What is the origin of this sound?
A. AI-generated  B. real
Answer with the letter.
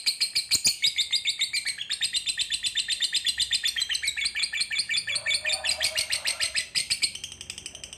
B